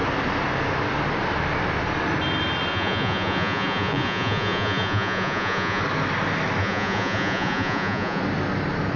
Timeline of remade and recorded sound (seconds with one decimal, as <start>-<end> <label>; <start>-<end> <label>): 0.0-2.7 recorded; 2.7-5.8 remade; 5.8-6.6 recorded; 6.6-8.2 remade; 8.2-9.0 recorded